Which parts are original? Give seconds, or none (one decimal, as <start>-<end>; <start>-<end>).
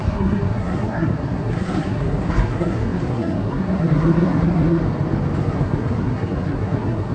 4.8-5.4